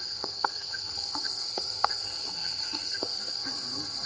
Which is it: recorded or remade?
remade